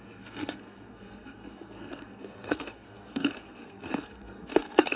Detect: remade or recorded remade